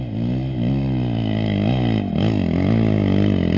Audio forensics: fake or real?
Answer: real